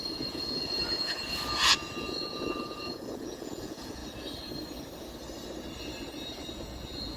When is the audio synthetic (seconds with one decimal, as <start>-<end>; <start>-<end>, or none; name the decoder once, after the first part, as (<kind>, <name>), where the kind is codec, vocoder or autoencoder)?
0.0-4.0 (vocoder, Vocos); 6.4-7.2